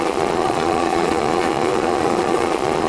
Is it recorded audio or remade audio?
remade